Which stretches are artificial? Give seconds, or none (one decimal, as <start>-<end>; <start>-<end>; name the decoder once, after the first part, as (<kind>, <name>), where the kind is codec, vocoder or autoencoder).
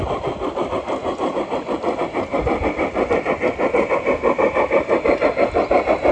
0.0-3.7 (vocoder, BigVGAN v2)